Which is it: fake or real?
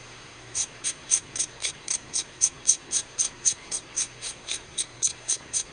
fake